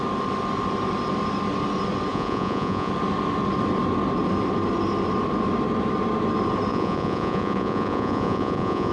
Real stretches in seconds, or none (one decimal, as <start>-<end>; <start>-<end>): 0.0-2.1; 2.9-6.7